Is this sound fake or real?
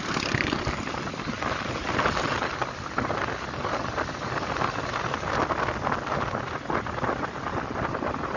real